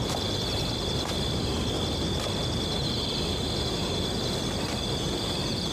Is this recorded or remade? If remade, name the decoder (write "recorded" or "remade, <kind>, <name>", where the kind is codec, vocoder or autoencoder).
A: recorded